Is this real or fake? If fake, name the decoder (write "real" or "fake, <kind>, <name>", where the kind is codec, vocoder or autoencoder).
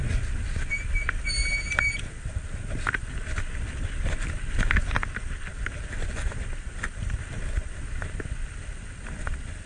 fake, vocoder, BigVGAN v2